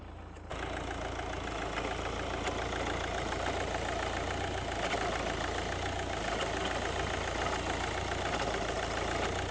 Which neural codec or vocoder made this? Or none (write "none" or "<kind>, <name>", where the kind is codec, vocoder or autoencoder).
none